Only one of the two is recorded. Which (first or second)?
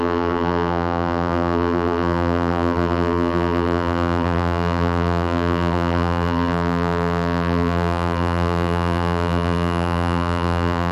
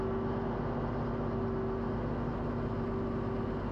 second